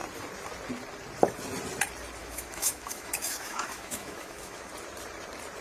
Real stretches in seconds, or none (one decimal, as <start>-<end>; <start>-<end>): 0.0-2.2; 4.7-5.6